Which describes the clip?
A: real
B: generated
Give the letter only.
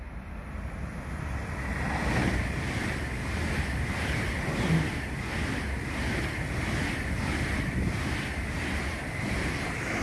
A